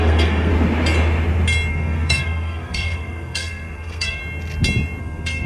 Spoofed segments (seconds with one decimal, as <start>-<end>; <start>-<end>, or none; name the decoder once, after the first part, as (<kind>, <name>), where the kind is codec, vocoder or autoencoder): 0.0-0.5 (codec, SNAC); 1.7-4.2; 5.0-5.5